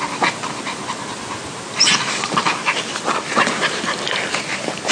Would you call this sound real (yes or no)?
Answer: yes